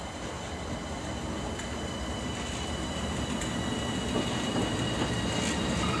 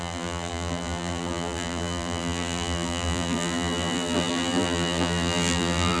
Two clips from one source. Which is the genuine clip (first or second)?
first